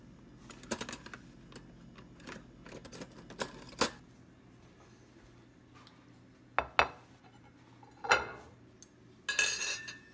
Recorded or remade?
recorded